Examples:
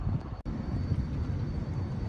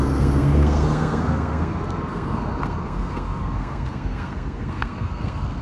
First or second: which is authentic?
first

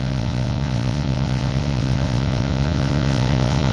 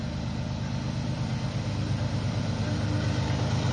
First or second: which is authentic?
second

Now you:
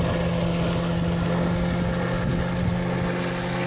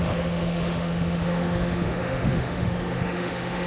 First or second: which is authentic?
first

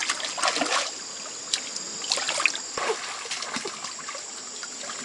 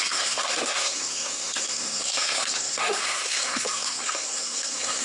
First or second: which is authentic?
first